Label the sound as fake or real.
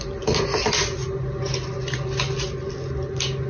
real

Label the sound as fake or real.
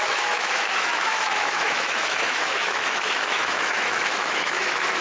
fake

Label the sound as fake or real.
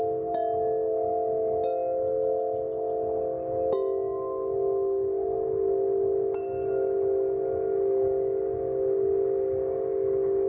real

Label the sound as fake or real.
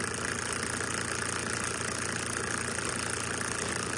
real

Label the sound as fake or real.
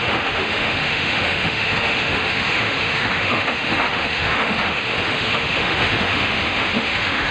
fake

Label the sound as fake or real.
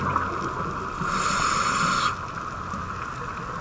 real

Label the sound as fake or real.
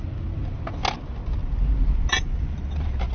real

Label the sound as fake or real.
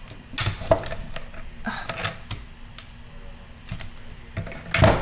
real